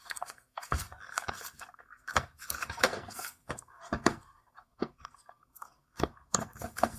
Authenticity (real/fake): fake